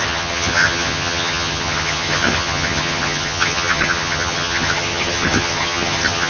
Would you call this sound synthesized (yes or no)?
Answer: yes